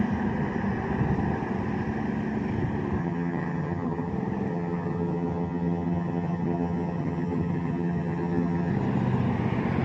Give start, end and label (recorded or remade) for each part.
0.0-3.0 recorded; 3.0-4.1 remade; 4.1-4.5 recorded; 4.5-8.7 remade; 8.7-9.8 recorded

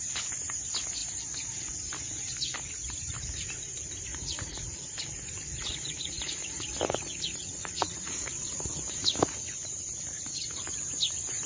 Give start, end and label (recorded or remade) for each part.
0.0-4.1 recorded; 4.1-4.8 remade; 4.8-5.5 recorded; 5.5-9.5 remade; 9.5-11.5 recorded

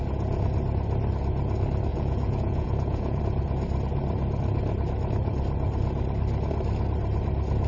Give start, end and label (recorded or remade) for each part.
0.0-1.9 recorded; 1.9-3.2 remade; 3.2-7.7 recorded

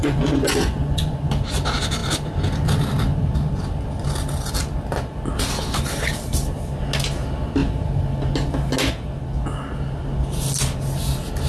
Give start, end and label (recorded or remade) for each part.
0.0-1.3 remade; 1.3-11.5 recorded